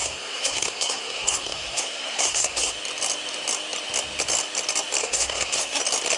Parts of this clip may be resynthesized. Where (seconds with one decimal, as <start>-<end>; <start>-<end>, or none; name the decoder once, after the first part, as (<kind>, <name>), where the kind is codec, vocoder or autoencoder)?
0.0-2.7 (codec, SNAC); 5.0-5.8